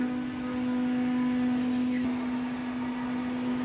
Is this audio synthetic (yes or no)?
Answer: no